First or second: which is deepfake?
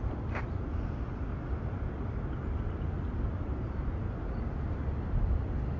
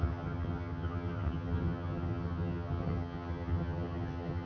second